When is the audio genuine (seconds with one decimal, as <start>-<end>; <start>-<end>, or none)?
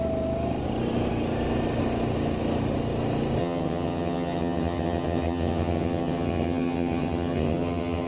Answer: 0.0-3.4